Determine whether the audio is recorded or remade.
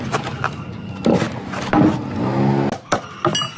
recorded